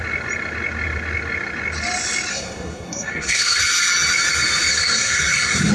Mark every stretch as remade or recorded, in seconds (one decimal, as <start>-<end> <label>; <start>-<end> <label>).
0.0-2.3 recorded; 2.3-3.6 remade; 3.6-4.7 recorded; 4.7-5.7 remade

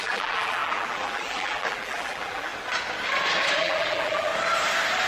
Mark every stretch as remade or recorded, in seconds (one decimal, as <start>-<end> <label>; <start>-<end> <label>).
0.0-2.5 remade; 2.5-3.6 recorded; 3.6-4.3 remade; 4.3-5.1 recorded

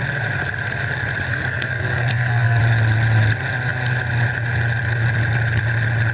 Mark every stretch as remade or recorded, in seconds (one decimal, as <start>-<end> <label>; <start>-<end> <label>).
0.0-1.3 recorded; 1.3-2.6 remade; 2.6-6.1 recorded